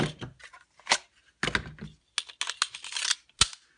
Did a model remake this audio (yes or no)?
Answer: no